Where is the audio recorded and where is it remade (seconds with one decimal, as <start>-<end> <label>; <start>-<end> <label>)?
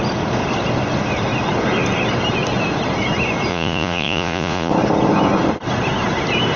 0.0-3.5 recorded; 3.5-4.7 remade; 4.7-6.6 recorded